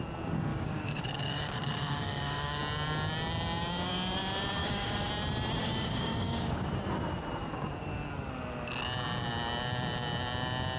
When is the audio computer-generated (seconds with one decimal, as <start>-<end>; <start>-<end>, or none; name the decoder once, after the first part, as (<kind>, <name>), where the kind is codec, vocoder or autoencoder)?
0.5-2.6 (codec, DAC); 4.6-5.1; 5.6-6.7